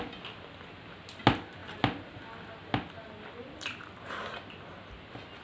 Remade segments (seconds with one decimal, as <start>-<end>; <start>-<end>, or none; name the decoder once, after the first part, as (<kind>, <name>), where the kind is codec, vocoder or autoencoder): none